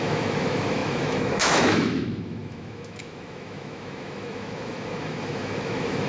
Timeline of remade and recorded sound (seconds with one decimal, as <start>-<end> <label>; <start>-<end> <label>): 0.0-6.1 remade